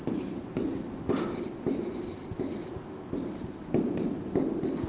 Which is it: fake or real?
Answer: real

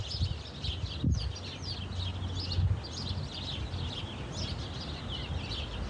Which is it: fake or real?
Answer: real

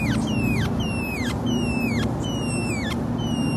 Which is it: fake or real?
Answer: real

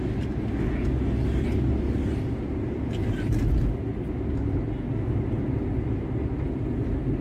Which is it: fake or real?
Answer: real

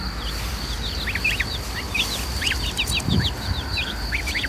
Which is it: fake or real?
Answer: real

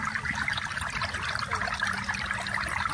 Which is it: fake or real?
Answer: real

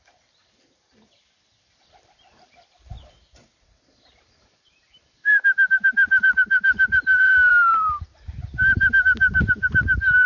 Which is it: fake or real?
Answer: fake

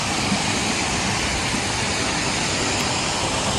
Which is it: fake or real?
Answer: real